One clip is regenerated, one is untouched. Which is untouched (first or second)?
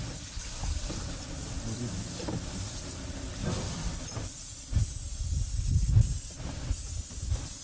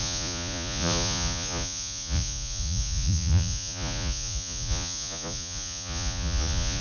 first